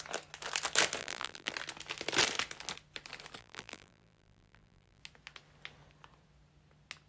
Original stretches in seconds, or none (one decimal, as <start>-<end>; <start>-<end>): 0.0-1.0; 1.5-3.4; 5.0-7.1